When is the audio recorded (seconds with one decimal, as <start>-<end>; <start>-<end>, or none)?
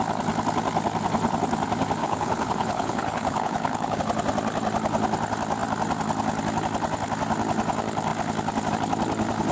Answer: 0.0-2.0; 4.0-9.5